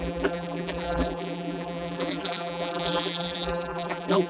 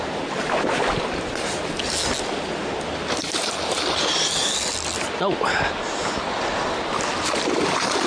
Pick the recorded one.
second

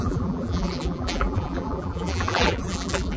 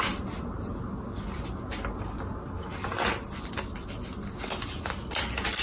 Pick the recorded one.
second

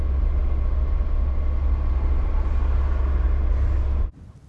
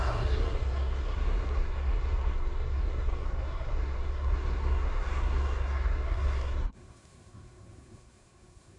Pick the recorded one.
first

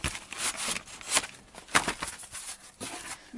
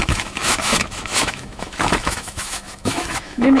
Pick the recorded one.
first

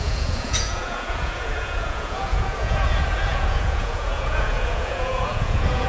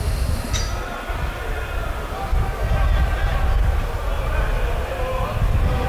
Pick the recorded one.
second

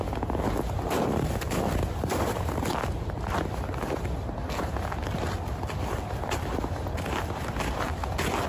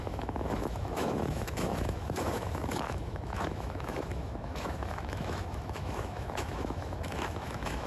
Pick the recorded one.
first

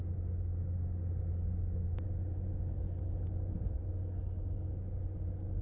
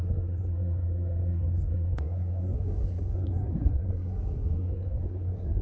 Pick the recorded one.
first